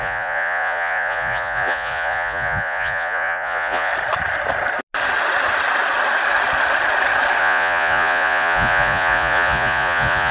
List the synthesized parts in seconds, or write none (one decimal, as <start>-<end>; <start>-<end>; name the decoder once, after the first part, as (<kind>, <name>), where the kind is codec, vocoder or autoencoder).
0.0-3.9 (vocoder, Vocos); 7.4-10.3